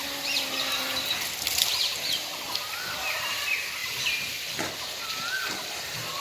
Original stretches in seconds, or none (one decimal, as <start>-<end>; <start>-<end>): 0.0-3.8; 5.8-6.2